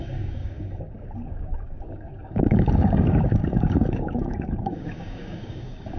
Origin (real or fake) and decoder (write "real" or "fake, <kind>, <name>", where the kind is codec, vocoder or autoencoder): fake, codec, DAC